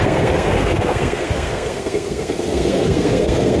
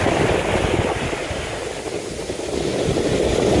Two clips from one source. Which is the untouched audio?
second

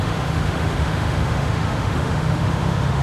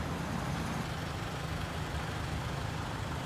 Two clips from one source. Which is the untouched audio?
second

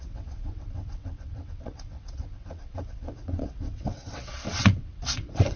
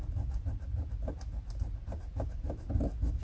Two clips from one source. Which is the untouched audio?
second